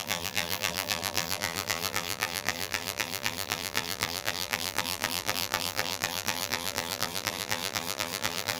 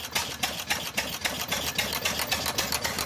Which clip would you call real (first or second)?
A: second